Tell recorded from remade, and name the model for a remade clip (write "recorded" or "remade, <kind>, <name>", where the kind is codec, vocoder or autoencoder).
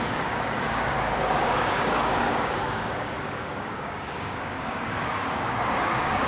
remade, codec, DAC